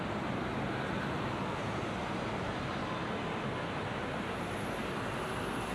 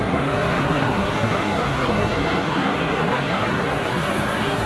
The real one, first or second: first